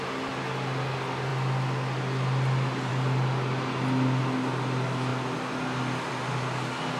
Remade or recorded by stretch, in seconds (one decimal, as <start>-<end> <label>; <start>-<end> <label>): 0.0-7.0 recorded